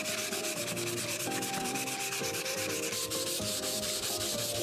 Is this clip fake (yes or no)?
yes